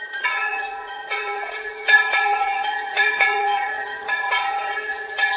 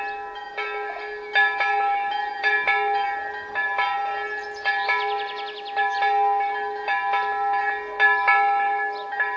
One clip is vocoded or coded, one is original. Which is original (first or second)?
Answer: second